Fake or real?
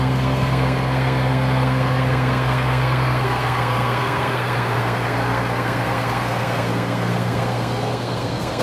fake